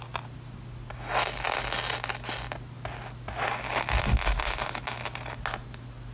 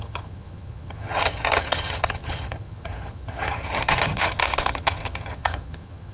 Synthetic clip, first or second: second